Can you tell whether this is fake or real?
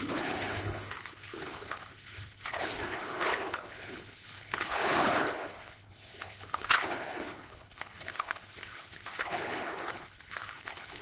fake